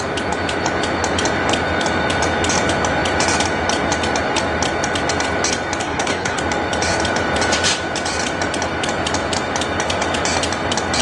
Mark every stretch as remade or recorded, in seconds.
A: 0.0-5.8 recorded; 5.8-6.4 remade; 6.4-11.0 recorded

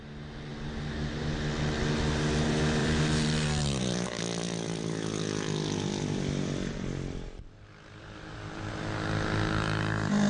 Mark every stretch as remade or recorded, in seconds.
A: 0.0-2.8 recorded; 2.8-4.9 remade; 4.9-8.0 recorded; 8.0-8.7 remade; 8.7-10.3 recorded

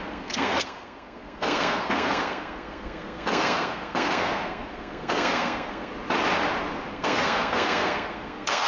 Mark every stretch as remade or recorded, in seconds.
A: 0.0-5.9 remade; 5.9-6.9 recorded; 6.9-8.7 remade

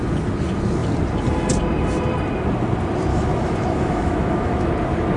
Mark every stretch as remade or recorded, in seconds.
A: 0.0-3.1 recorded; 3.1-4.7 remade; 4.7-5.2 recorded

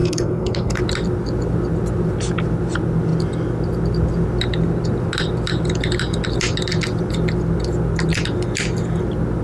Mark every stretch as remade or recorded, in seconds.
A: 0.0-0.8 remade; 0.8-9.4 recorded